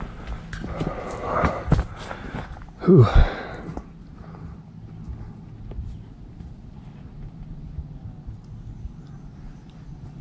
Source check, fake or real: real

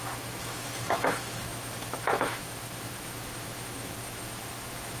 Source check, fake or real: fake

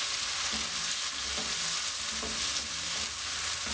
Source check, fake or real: real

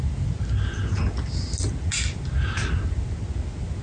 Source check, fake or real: real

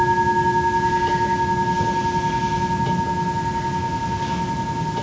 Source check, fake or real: real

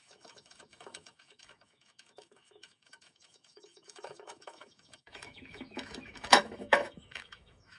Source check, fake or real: fake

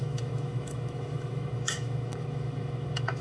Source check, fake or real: fake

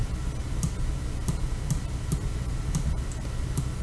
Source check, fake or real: real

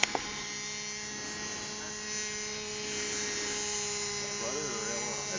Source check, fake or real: real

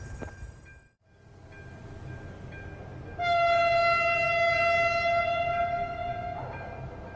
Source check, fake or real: real